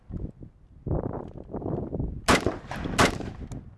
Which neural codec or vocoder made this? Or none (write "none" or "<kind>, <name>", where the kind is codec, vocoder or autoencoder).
none